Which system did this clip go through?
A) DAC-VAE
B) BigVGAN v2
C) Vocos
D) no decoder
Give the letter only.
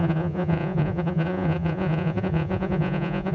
C